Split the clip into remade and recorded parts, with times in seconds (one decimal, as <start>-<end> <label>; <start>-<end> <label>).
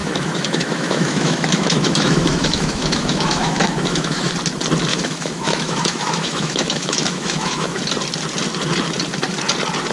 0.0-4.3 remade; 4.3-4.9 recorded; 4.9-7.8 remade; 7.8-9.9 recorded